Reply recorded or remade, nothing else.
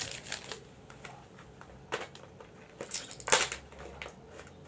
recorded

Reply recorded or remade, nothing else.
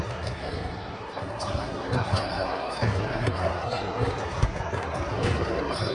remade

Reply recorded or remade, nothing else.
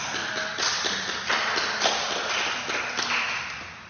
recorded